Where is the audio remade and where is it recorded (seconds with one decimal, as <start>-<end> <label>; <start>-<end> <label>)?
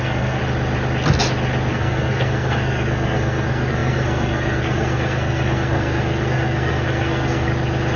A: 0.0-0.4 remade; 0.4-1.7 recorded; 1.7-7.5 remade; 7.5-8.0 recorded